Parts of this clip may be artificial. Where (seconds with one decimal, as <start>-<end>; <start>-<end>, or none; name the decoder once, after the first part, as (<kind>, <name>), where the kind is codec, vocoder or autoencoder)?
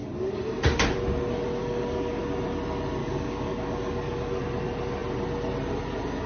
1.6-2.2 (codec, DAC); 3.0-4.4